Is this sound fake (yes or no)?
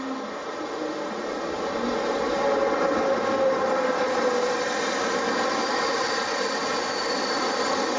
no